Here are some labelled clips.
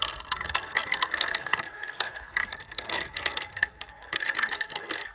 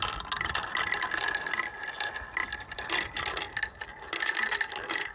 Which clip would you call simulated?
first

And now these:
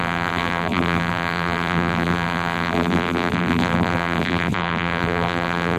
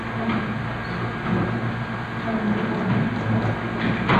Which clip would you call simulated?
first